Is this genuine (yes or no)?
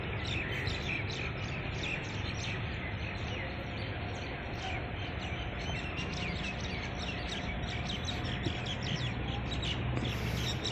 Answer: yes